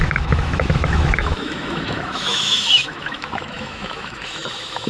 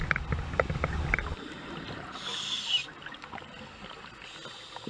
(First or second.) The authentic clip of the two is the second